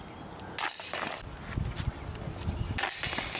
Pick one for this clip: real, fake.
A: real